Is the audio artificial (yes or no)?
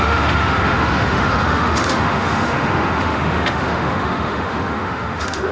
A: yes